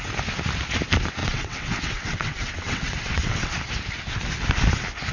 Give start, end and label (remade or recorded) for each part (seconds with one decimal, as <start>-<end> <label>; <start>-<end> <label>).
0.0-1.2 recorded; 1.2-3.5 remade; 3.5-5.1 recorded